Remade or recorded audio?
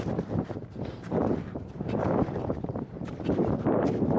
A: remade